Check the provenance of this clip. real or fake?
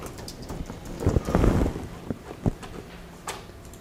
real